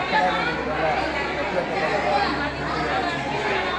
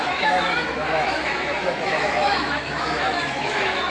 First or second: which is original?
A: first